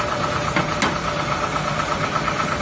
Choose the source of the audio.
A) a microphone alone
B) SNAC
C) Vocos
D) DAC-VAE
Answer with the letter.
A